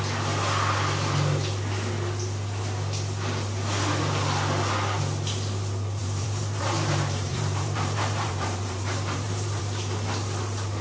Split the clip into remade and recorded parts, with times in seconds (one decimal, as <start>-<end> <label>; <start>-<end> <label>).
0.0-6.0 recorded; 6.0-9.6 remade; 9.6-10.8 recorded